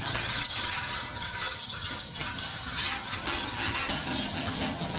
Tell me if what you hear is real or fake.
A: fake